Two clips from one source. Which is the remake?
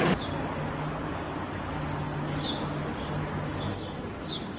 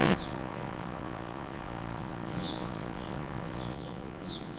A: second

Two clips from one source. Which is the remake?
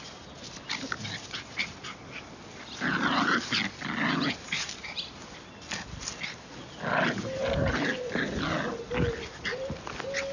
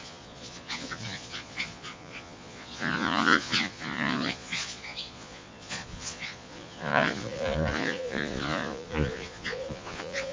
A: second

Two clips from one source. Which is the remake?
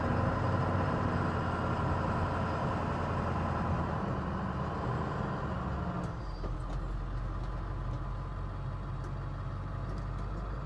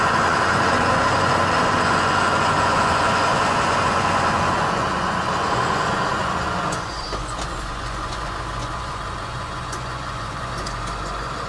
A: second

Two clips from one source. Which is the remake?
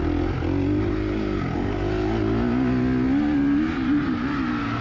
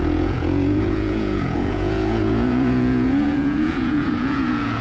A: second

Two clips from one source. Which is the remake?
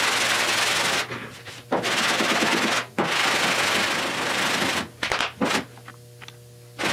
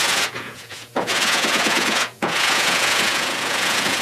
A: second